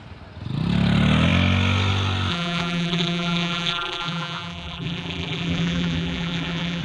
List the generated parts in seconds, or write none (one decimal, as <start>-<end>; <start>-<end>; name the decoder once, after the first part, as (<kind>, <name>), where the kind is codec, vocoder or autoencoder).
2.3-6.8 (vocoder, BigVGAN v2)